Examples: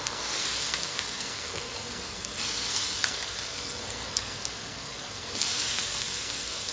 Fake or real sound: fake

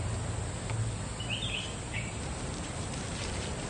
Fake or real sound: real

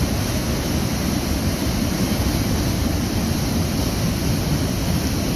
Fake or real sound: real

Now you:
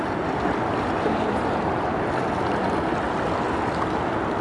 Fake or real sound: real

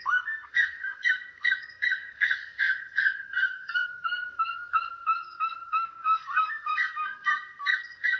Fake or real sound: fake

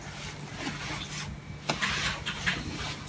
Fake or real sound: real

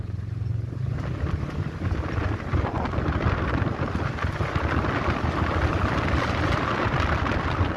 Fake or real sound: real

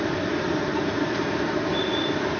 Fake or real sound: real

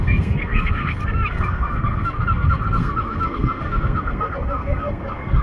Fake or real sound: fake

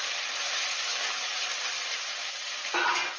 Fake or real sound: real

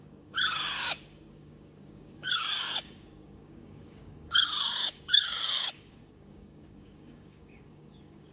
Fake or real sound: fake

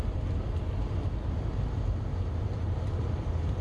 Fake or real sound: real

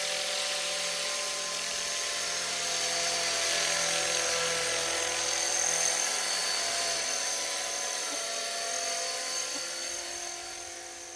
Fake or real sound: real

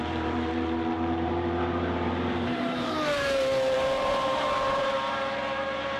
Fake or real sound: fake